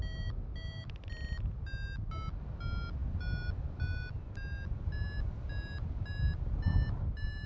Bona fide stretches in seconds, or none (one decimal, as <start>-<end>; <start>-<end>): 0.0-7.5